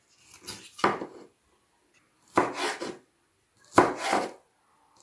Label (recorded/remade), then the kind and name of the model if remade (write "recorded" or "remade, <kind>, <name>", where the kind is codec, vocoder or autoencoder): recorded